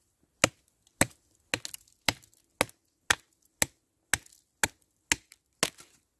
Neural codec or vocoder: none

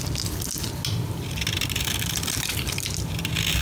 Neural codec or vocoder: none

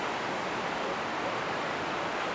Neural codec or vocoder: none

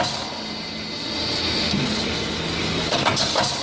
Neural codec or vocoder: none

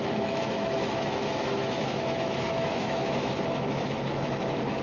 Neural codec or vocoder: autoencoder, DAC-VAE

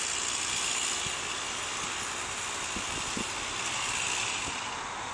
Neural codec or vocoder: none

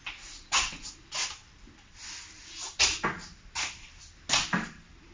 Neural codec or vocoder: none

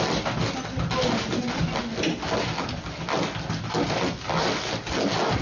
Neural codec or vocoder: none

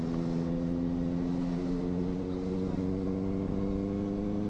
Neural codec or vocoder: none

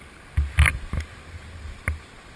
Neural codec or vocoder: none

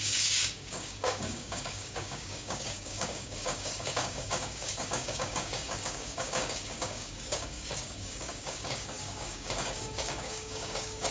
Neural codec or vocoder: codec, DAC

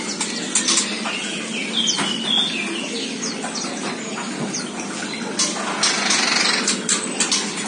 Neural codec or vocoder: none